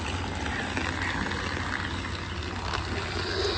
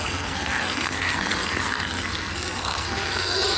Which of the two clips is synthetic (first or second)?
second